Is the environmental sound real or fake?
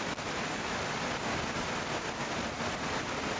real